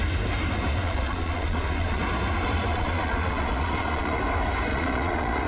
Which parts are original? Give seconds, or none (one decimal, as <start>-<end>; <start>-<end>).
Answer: 0.0-0.8; 2.0-2.7; 4.2-4.7